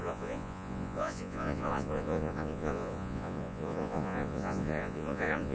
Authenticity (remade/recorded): remade